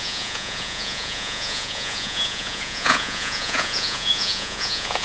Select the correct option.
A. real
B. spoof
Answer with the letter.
B